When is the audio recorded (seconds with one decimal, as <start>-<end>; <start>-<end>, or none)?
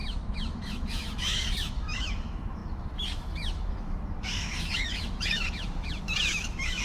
none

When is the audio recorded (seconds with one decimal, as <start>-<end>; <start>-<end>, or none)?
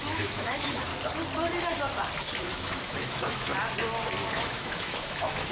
0.9-2.4; 3.5-4.3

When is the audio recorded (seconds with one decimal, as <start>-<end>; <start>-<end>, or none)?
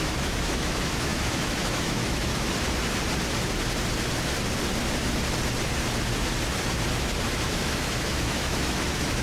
2.3-7.3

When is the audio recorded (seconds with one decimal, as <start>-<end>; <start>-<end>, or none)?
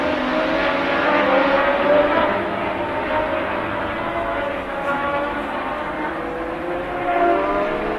0.0-4.1; 5.3-8.0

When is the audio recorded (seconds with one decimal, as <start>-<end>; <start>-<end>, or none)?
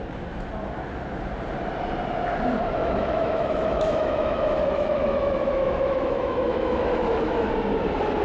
0.0-2.8; 7.5-8.2